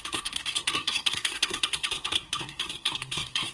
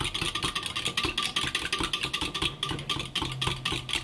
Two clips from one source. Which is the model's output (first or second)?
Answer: first